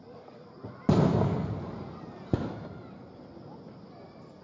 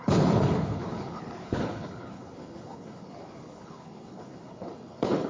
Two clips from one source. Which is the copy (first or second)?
second